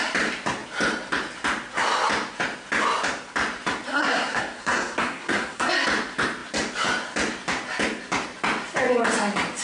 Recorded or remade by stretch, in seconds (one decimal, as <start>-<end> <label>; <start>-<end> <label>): 0.0-3.9 recorded; 3.9-5.7 remade; 5.7-9.6 recorded